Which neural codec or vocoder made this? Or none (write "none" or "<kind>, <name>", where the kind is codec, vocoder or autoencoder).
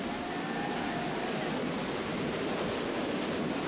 none